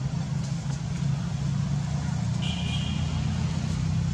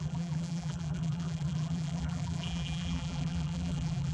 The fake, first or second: second